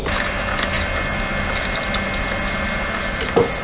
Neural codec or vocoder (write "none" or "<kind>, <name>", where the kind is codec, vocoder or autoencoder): none